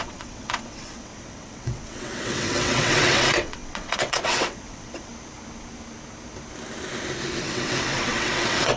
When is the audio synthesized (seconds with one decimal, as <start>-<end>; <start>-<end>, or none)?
0.0-5.1; 7.4-8.8